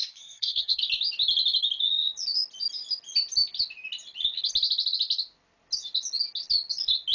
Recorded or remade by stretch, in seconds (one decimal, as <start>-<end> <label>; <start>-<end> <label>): 0.0-0.8 remade; 0.8-7.1 recorded